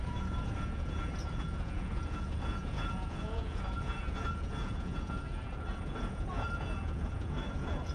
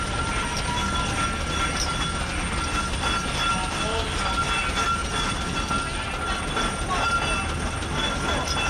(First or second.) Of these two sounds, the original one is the second